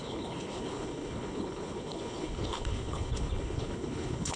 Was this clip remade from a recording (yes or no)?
yes